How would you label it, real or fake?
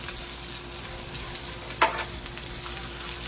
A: real